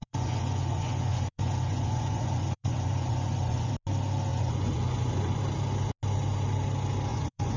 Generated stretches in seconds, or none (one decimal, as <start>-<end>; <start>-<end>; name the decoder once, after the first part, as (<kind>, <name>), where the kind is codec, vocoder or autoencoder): 0.0-3.7 (vocoder, Vocos); 4.3-5.4; 7.1-7.6